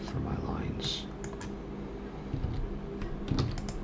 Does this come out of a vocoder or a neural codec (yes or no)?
no